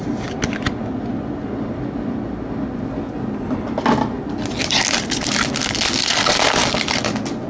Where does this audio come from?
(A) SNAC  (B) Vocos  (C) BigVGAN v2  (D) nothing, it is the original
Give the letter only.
D